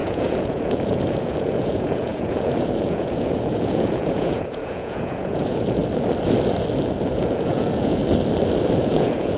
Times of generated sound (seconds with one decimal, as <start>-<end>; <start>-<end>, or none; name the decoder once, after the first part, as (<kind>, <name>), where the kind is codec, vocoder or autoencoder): 0.0-5.8 (vocoder, Vocos); 7.1-8.0; 8.8-9.4